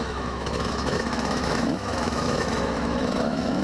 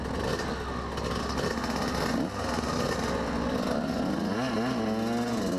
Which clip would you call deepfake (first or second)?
first